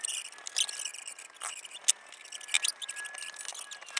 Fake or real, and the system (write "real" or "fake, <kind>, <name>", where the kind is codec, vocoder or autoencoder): real